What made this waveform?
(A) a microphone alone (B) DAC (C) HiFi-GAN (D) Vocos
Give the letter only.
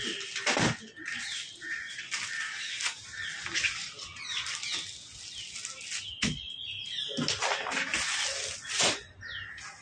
A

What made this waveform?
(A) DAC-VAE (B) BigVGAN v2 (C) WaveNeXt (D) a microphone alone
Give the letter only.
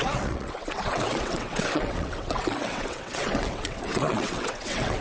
C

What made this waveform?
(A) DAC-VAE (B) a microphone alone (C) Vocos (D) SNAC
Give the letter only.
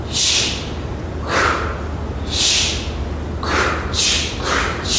B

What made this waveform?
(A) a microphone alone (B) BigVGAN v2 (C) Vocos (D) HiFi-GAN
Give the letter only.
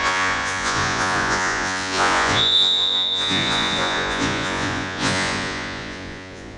C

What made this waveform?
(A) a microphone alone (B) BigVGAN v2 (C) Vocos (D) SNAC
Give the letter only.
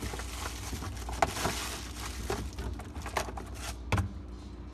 A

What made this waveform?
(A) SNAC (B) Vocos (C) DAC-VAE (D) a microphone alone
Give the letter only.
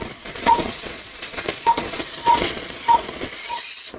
B